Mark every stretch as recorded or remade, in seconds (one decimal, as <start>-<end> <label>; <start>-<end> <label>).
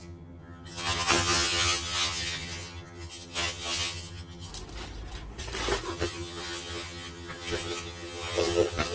0.0-4.5 remade; 4.5-5.9 recorded; 5.9-8.9 remade